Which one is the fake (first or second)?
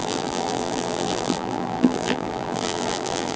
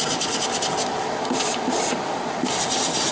first